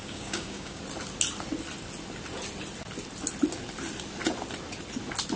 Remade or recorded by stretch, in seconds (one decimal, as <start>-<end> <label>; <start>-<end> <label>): 0.0-0.8 remade; 0.8-5.4 recorded